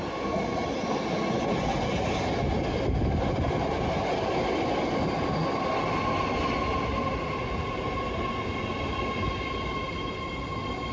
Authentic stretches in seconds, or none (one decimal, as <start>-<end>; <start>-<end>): 0.0-10.9